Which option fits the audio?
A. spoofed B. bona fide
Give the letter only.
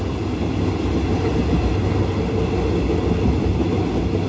B